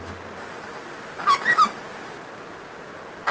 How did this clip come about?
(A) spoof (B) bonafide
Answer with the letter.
B